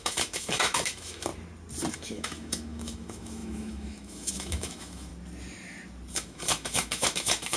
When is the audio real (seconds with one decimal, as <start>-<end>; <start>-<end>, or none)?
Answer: 1.3-1.9; 5.1-6.1